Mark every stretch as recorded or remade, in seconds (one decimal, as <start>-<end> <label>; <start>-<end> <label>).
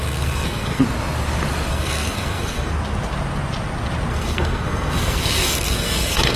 0.0-0.8 remade; 0.8-1.7 recorded; 1.7-2.7 remade; 2.7-4.1 recorded; 4.1-6.4 remade